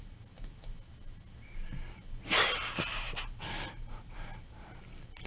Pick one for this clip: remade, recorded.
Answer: recorded